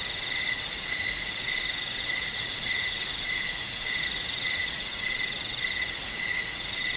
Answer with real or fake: fake